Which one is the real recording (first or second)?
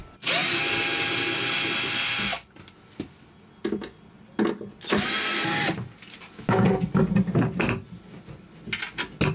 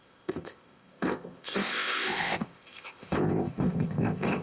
first